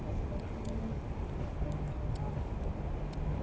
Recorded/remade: recorded